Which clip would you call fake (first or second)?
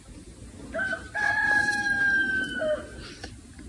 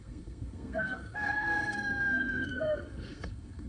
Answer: second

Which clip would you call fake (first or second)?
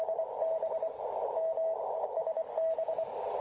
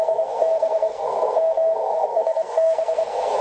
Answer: second